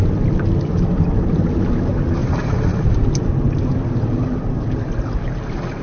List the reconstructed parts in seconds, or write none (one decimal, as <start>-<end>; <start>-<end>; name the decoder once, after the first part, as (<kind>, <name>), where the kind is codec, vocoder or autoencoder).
2.2-3.0 (vocoder, BigVGAN v2)